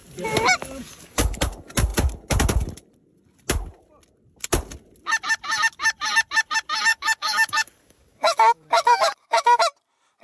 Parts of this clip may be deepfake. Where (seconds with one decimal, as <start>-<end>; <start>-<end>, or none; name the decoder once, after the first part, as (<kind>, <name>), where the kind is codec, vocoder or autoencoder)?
0.8-1.4 (codec, DAC); 6.9-9.6